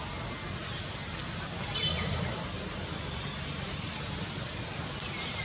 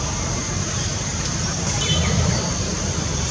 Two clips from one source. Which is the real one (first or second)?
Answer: first